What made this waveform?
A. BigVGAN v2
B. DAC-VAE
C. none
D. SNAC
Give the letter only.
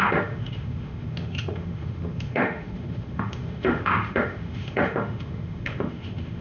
B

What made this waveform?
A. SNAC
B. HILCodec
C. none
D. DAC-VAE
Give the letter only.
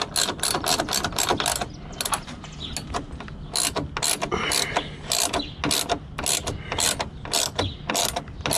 C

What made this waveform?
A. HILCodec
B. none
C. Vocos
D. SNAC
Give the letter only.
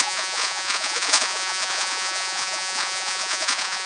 C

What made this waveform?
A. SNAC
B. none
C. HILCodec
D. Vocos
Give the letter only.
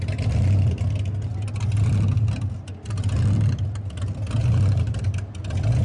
B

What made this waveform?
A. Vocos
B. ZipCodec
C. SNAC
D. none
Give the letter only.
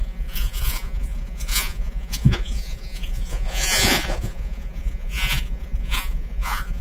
A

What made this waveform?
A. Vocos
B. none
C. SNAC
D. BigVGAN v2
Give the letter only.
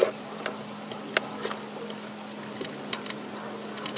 B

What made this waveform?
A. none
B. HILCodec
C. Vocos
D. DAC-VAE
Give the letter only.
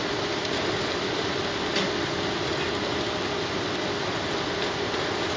A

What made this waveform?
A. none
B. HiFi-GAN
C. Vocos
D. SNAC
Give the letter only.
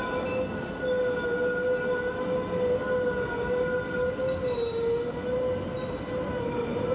A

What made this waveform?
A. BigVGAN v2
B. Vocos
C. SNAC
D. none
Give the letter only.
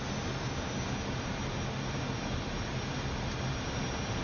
D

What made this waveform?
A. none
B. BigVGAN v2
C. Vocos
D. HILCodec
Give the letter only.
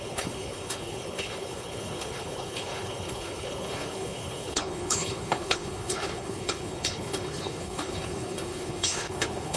D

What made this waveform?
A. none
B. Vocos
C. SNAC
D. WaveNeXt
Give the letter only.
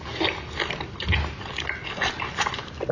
A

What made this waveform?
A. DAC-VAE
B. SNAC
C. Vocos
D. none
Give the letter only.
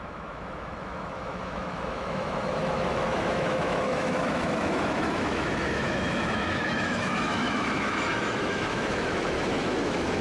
A